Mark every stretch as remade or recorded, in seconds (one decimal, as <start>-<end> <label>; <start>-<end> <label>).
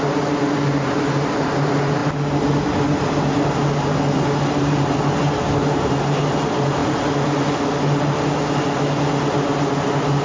0.0-10.2 recorded